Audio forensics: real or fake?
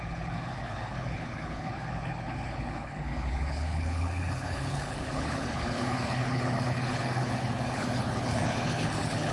fake